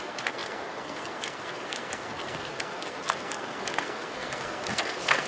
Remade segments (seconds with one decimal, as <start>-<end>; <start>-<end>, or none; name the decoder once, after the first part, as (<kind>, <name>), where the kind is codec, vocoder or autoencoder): 0.0-5.3 (codec, SNAC)